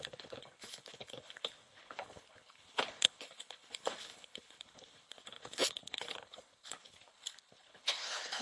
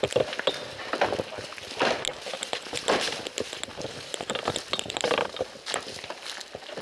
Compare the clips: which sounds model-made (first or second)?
first